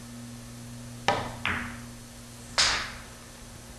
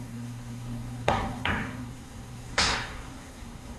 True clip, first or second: first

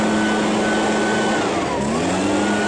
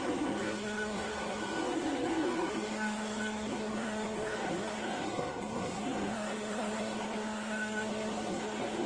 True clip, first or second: first